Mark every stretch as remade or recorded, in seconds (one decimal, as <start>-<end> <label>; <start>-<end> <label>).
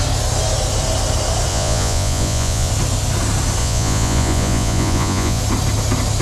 0.0-1.5 recorded; 1.5-2.7 remade; 2.7-3.6 recorded; 3.6-5.4 remade; 5.4-6.2 recorded